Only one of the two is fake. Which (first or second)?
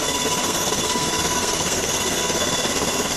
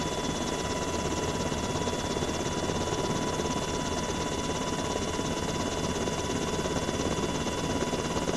first